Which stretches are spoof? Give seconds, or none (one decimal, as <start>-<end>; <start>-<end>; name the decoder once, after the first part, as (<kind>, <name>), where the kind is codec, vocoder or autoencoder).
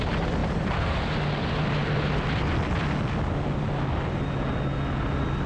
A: 0.4-1.0 (vocoder, BigVGAN v2)